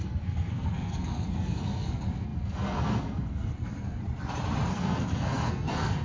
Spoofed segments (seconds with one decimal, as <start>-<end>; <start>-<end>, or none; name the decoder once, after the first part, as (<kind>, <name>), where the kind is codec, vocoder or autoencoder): 0.0-4.0 (codec, SNAC); 4.7-6.0